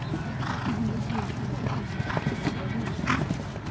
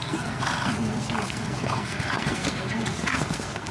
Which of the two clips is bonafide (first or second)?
first